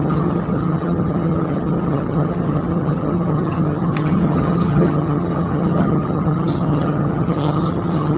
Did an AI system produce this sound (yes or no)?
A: yes